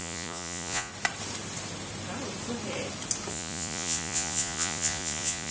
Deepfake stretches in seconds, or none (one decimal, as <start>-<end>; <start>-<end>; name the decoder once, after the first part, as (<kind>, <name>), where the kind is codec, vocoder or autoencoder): 0.0-0.9 (vocoder, Vocos); 3.3-5.5